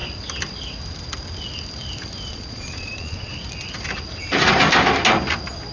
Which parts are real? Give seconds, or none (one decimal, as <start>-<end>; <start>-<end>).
0.0-2.3; 3.3-5.7